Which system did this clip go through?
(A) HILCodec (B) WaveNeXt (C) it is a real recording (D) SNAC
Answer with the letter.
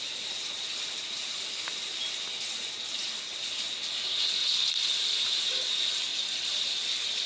C